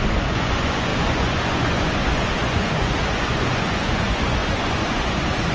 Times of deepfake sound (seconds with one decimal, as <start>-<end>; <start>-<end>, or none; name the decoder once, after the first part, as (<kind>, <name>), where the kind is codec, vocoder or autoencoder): 0.0-5.5 (vocoder, Vocos)

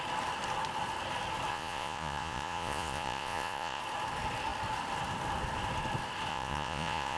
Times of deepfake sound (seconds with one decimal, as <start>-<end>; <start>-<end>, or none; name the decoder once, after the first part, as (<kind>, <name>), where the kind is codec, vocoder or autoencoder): 1.5-3.8 (vocoder, Vocos); 6.3-7.2

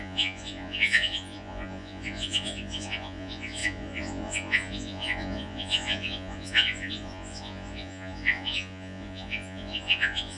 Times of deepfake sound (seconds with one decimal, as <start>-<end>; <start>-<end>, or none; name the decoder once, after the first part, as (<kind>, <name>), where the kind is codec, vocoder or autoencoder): 0.0-10.4 (vocoder, Vocos)

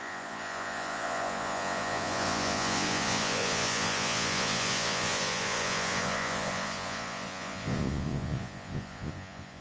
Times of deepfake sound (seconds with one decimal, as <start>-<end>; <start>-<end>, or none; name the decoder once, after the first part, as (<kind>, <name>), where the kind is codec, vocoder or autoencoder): 0.0-9.6 (vocoder, Vocos)